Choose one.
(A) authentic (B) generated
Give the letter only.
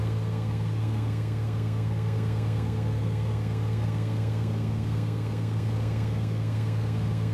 B